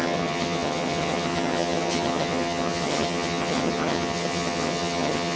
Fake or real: fake